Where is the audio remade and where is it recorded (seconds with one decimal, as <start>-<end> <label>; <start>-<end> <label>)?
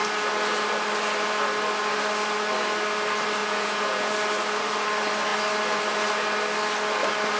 0.0-3.4 recorded; 3.4-4.1 remade; 4.1-7.4 recorded